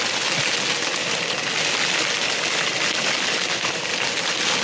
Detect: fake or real real